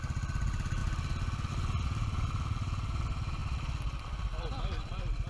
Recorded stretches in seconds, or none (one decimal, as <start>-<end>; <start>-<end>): 0.0-3.4